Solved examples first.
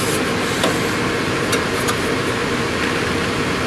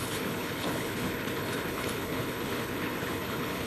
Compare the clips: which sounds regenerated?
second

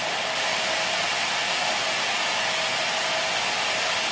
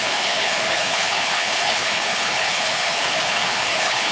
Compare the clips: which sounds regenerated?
second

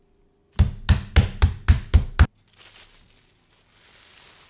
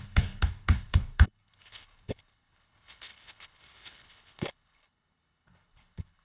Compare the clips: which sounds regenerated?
second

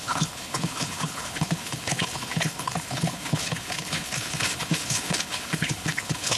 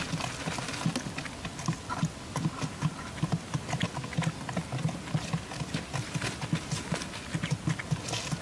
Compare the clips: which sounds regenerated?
first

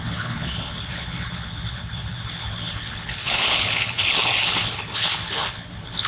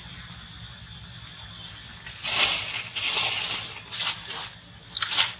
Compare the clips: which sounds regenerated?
first